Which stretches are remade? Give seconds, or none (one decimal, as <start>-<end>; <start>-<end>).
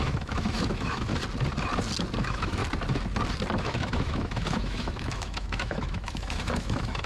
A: 0.0-1.1; 2.2-2.6; 3.6-7.1